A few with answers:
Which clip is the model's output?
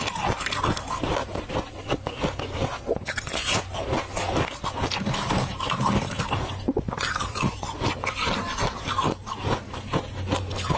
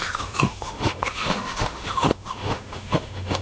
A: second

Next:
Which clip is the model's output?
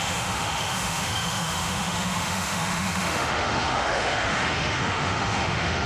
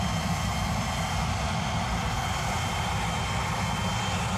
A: first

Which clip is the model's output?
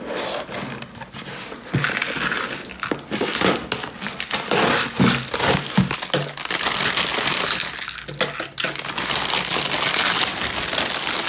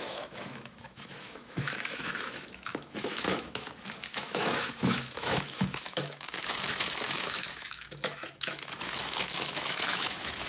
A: second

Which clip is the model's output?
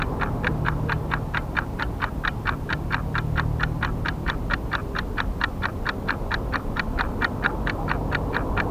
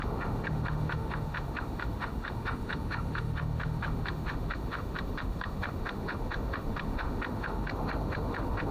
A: second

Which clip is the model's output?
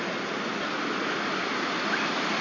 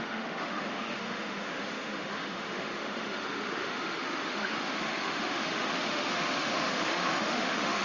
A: second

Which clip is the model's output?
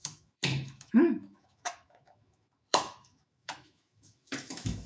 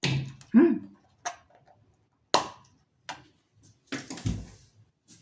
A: first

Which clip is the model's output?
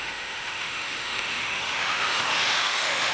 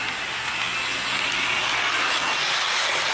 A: first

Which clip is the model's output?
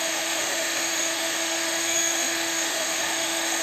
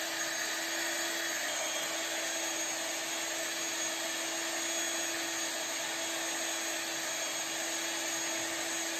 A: first